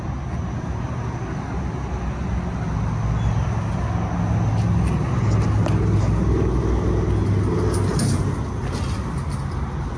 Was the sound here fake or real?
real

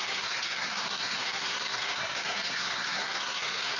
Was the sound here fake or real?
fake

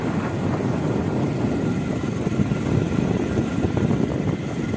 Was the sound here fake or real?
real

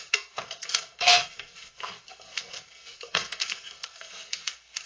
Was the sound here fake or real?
fake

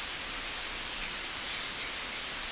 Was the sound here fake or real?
real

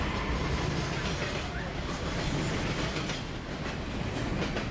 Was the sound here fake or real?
real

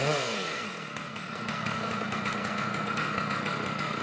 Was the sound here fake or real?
fake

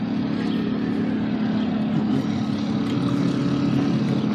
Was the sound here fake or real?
real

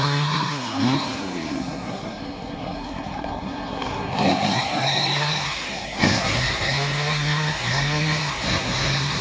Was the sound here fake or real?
fake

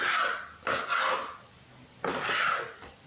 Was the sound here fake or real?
real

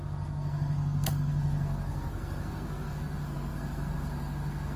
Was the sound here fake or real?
fake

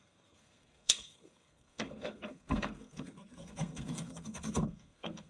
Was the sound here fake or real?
fake